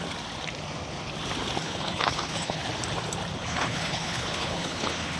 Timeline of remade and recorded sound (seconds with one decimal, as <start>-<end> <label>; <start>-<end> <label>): 0.0-1.6 recorded; 1.6-2.6 remade; 2.6-3.4 recorded; 3.4-5.2 remade

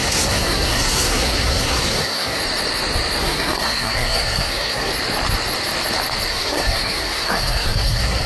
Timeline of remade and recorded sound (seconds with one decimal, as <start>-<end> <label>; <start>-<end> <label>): 0.0-2.4 remade; 2.4-3.2 recorded; 3.2-4.9 remade; 4.9-6.3 recorded; 6.3-8.3 remade

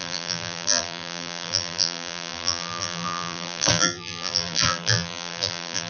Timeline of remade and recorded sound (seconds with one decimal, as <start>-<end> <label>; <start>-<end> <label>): 0.0-5.9 remade

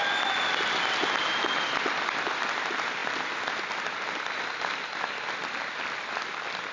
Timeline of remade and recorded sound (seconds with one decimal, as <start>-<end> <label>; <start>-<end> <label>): 0.0-6.7 recorded

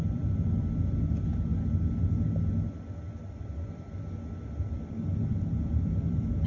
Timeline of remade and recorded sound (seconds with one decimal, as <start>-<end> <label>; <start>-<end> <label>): 0.0-1.5 remade; 1.5-4.5 recorded; 4.5-6.5 remade

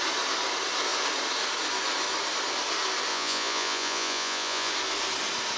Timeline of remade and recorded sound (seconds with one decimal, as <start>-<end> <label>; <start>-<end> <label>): 0.0-3.1 recorded; 3.1-4.7 remade; 4.7-5.6 recorded

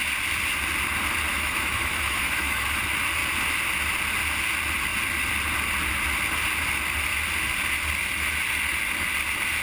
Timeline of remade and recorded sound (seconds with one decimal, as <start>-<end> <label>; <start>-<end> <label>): 0.0-1.3 recorded; 1.3-2.8 remade; 2.8-9.6 recorded

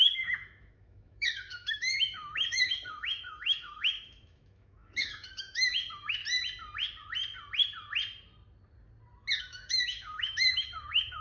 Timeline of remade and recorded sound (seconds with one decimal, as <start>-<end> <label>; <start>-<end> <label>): 0.0-6.2 remade; 6.2-9.4 recorded; 9.4-11.2 remade